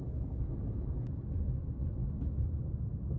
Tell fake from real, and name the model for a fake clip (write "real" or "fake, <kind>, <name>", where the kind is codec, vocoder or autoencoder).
real